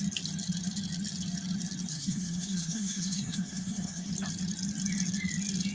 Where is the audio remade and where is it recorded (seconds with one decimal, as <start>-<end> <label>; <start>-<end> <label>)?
0.0-1.9 recorded; 1.9-4.1 remade; 4.1-5.7 recorded